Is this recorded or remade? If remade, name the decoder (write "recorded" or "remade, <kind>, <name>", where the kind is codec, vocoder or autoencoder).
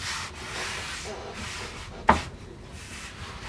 recorded